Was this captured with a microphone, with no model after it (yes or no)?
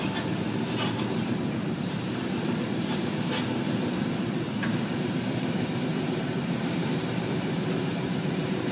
no